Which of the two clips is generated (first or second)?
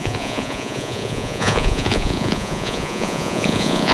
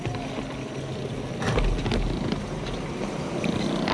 first